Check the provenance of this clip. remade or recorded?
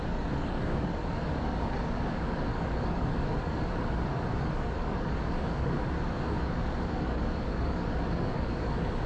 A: remade